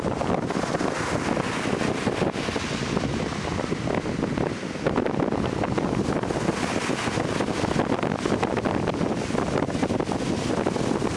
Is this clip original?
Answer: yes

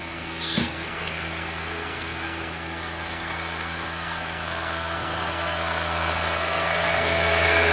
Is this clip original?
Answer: no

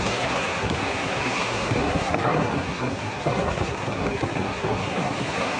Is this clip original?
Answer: no